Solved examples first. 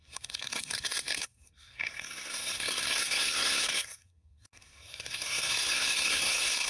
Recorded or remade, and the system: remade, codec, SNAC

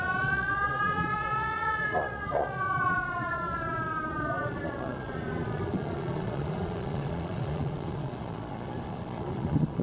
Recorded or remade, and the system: remade, vocoder, Vocos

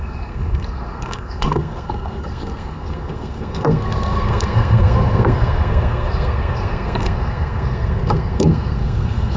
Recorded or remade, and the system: remade, codec, SNAC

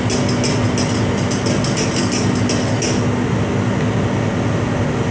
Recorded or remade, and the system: recorded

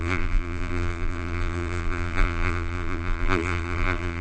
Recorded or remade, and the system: remade, vocoder, BigVGAN v2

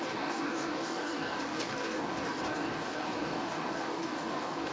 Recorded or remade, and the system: remade, codec, DAC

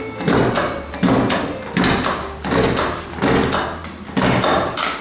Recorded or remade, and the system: recorded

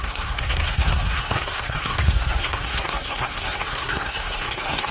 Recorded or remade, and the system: remade, codec, SNAC